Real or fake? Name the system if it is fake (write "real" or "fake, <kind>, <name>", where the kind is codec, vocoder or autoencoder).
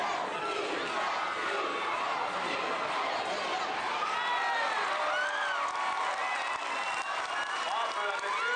real